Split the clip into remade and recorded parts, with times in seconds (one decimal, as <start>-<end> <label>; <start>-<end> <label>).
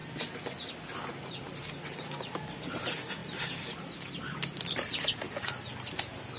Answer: 0.0-6.4 recorded